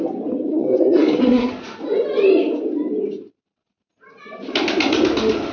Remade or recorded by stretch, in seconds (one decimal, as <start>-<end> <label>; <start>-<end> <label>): 0.0-0.5 recorded; 0.5-1.5 remade; 1.5-5.5 recorded